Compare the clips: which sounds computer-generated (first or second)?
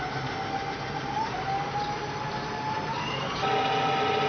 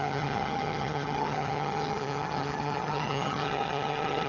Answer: second